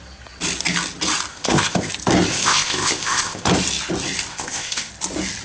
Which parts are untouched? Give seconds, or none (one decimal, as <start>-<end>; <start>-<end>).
0.0-1.3; 1.9-2.3; 3.5-4.3; 4.9-5.4